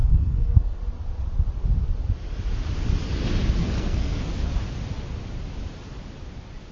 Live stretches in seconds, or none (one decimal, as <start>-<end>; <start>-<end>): 0.8-3.6; 4.3-6.7